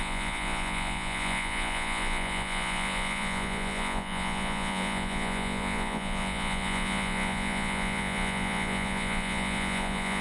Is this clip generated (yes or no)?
yes